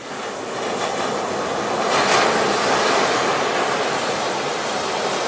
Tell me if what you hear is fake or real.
real